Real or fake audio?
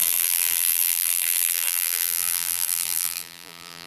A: fake